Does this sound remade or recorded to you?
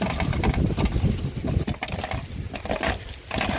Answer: recorded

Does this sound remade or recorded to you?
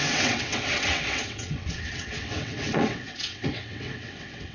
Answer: remade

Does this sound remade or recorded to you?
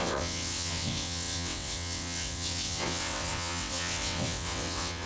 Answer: remade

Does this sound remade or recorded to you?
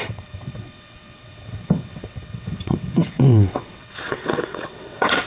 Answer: remade